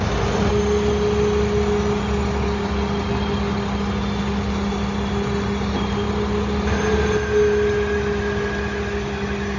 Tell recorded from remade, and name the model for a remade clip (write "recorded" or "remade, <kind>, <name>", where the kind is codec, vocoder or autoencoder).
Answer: recorded